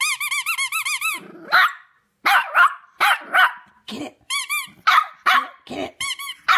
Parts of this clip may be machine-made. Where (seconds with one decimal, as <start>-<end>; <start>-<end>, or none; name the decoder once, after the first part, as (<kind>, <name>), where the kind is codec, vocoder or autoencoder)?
2.4-6.6 (vocoder, BigVGAN v2)